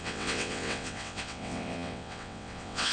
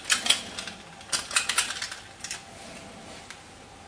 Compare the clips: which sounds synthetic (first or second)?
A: first